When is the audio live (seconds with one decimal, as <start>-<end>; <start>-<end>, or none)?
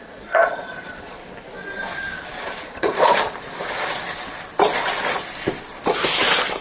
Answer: 1.2-2.4; 3.1-6.6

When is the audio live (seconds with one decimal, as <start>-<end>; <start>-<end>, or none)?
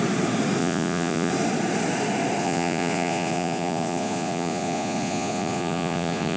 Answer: 0.0-0.6; 1.3-2.4